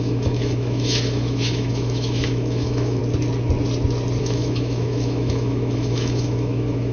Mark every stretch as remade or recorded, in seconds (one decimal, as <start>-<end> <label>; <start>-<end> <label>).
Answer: 0.0-3.0 remade; 3.0-4.2 recorded; 4.2-6.9 remade